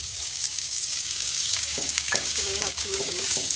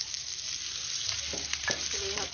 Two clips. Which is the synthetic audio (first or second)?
first